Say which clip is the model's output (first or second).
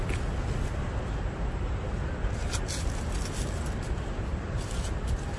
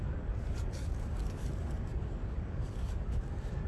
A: second